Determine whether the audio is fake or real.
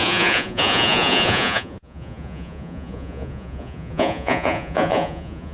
fake